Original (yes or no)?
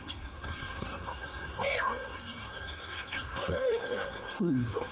no